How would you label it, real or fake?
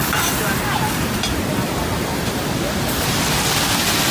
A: real